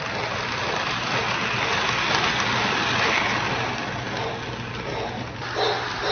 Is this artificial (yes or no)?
no